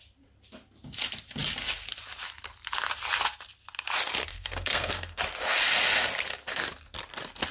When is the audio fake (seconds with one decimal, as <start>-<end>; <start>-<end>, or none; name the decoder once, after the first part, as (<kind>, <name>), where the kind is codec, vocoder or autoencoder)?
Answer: 4.3-5.2 (codec, SNAC)